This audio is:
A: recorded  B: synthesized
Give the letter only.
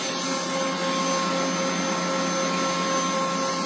A